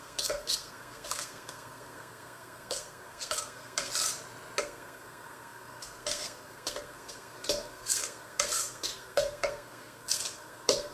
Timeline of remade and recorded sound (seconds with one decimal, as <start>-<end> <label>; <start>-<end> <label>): 0.0-3.9 remade; 3.9-4.6 recorded; 4.6-10.9 remade